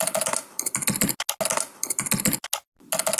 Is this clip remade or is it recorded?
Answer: recorded